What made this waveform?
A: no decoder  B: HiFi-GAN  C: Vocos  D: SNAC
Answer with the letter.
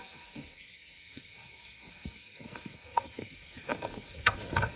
D